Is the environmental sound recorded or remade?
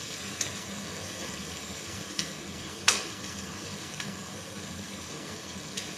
remade